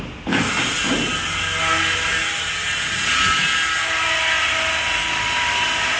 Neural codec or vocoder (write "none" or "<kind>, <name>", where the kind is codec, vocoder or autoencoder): none